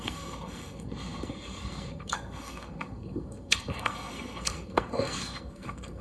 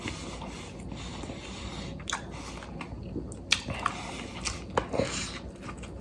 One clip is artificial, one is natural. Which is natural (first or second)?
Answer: second